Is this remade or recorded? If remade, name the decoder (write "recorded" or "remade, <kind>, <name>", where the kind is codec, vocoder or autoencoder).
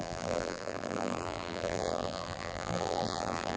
remade, vocoder, BigVGAN v2